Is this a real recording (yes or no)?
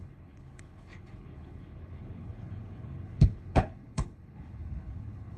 no